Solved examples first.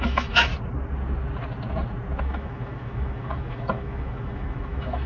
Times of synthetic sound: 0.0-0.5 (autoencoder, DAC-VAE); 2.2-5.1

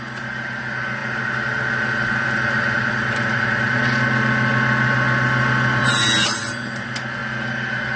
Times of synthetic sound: none

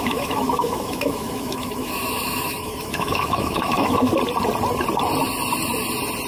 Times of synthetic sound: 0.0-4.1 (autoencoder, DAC-VAE)

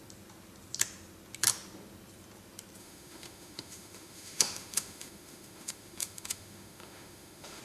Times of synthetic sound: 2.8-7.6 (autoencoder, DAC-VAE)